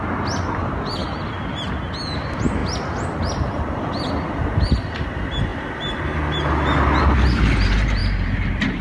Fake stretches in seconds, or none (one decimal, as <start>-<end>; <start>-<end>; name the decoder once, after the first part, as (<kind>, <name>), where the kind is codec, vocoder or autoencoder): none